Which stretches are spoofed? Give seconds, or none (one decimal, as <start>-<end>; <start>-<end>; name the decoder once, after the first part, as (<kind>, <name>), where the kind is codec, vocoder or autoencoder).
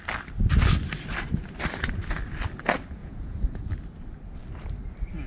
3.0-3.6 (vocoder, Vocos)